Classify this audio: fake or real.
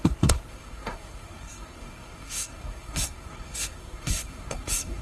fake